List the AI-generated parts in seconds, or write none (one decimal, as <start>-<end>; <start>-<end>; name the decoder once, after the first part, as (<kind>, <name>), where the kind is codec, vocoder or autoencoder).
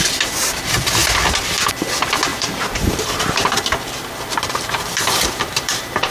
2.3-6.1 (vocoder, BigVGAN v2)